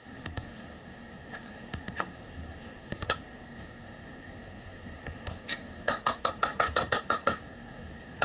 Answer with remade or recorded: remade